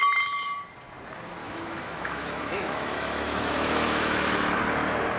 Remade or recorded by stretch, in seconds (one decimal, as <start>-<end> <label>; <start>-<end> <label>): 0.0-1.4 recorded; 1.4-4.5 remade; 4.5-5.2 recorded